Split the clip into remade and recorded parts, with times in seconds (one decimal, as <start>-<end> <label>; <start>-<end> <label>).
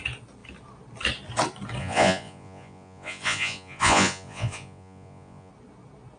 0.0-1.8 recorded; 1.8-5.5 remade; 5.5-6.2 recorded